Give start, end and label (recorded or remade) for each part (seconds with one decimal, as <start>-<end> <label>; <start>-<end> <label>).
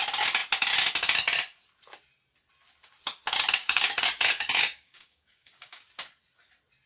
0.0-3.6 recorded; 3.6-5.8 remade; 5.8-6.9 recorded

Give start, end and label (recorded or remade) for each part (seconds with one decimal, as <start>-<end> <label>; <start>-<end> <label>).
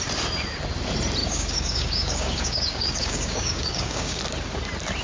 0.0-1.2 recorded; 1.2-4.2 remade; 4.2-5.0 recorded